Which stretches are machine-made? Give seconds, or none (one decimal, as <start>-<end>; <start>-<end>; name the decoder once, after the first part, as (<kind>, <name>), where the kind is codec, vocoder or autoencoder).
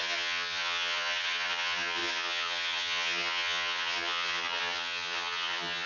0.0-5.9 (vocoder, HiFi-GAN)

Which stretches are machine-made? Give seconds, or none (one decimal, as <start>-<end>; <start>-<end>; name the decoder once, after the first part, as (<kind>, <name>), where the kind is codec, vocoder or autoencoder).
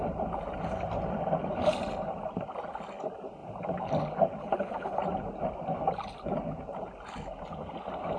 4.4-5.0 (codec, HILCodec)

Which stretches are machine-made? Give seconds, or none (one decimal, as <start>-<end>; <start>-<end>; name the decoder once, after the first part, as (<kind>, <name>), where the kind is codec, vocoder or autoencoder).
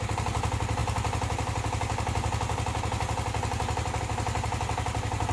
none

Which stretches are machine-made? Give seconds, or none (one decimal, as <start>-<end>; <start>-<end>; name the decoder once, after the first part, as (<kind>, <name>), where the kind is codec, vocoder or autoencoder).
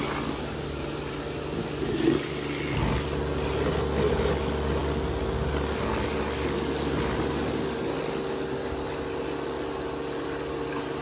none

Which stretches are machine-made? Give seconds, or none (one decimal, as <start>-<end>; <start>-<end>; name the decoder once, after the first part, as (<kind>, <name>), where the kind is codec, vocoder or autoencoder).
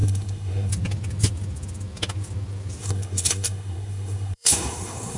0.0-0.7 (codec, SNAC); 2.8-5.2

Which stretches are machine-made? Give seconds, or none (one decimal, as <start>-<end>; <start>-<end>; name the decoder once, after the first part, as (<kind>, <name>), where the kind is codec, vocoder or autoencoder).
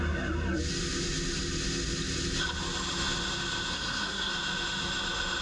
3.7-4.3 (codec, SNAC)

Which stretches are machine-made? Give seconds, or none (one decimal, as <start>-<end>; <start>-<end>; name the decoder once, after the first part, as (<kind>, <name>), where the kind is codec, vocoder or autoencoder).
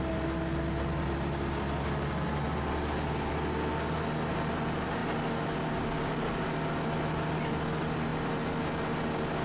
none